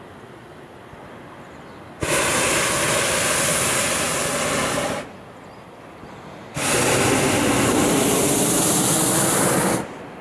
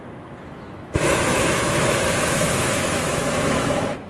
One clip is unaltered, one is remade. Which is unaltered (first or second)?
first